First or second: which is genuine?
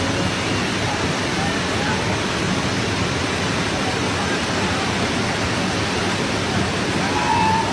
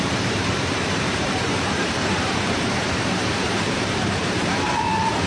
first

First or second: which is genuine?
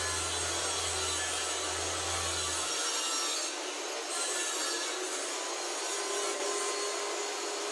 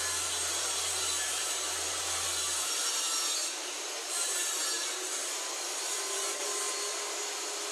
first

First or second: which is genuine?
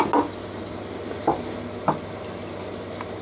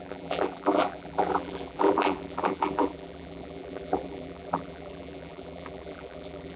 first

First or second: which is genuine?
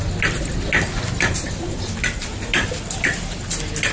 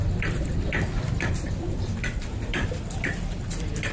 first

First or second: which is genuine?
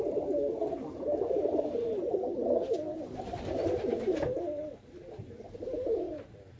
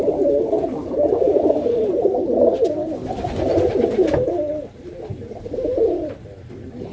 first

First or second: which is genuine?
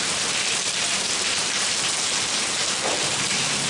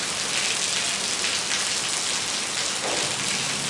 second